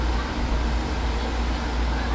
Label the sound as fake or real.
real